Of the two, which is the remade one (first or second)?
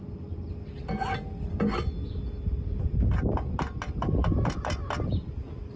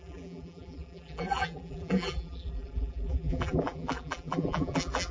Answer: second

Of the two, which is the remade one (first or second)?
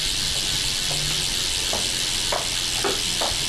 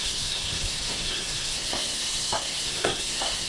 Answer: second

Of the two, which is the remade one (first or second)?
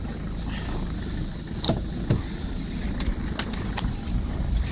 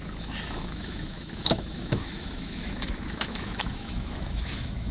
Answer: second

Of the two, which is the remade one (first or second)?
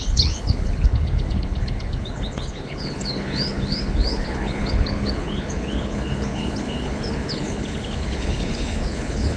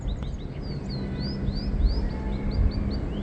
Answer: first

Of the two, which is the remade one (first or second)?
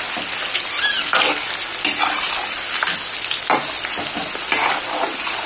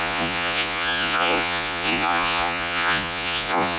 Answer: second